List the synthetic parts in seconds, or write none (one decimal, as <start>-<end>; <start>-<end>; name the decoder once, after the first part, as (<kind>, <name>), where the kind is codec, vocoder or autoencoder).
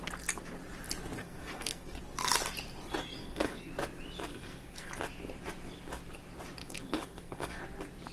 1.2-2.0 (codec, SNAC); 3.2-3.7; 4.3-4.9; 6.6-7.6